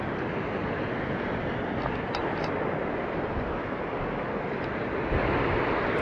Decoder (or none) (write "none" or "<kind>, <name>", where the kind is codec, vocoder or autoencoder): none